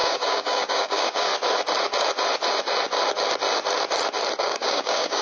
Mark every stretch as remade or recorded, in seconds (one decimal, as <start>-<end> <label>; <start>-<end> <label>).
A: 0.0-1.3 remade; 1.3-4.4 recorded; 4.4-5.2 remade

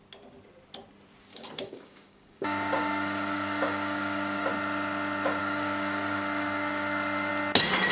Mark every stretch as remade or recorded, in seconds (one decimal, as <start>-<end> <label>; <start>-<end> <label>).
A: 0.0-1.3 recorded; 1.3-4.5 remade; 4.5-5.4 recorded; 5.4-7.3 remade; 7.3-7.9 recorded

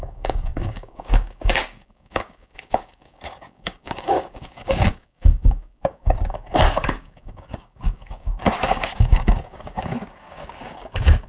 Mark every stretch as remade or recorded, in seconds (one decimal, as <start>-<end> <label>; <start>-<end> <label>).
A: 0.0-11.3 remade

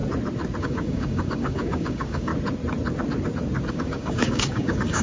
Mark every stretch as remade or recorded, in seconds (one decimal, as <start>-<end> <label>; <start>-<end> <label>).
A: 0.0-0.6 recorded; 0.6-2.3 remade; 2.3-3.7 recorded; 3.7-5.0 remade

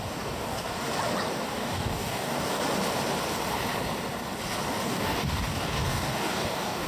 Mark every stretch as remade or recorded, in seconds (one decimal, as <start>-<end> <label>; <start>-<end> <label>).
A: 0.0-0.9 remade; 0.9-1.5 recorded; 1.5-2.6 remade; 2.6-4.7 recorded; 4.7-6.9 remade

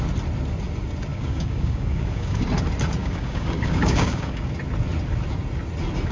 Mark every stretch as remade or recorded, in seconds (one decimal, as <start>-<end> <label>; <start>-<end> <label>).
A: 0.0-1.1 recorded; 1.1-2.4 remade; 2.4-3.0 recorded; 3.0-4.5 remade; 4.5-6.1 recorded